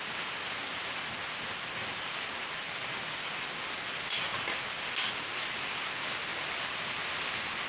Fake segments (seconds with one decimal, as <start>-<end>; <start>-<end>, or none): 1.8-2.9